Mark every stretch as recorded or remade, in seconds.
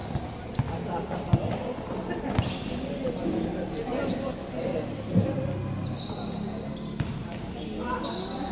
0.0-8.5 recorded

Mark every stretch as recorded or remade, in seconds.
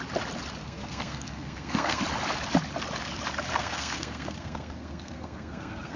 0.0-0.6 recorded; 0.6-2.0 remade; 2.0-3.5 recorded; 3.5-6.0 remade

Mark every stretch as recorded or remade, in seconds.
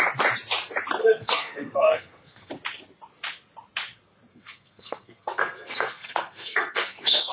0.0-1.0 recorded; 1.0-2.5 remade; 2.5-4.3 recorded; 4.3-7.3 remade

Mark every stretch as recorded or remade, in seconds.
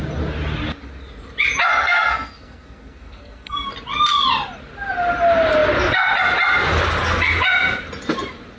0.0-1.8 recorded; 1.8-3.7 remade; 3.7-8.6 recorded